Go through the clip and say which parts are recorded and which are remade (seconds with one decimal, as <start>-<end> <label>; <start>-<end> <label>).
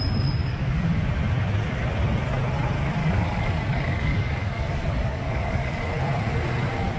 0.0-0.4 recorded; 0.4-1.0 remade; 1.0-3.0 recorded; 3.0-5.8 remade; 5.8-7.0 recorded